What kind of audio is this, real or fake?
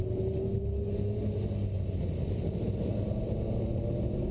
real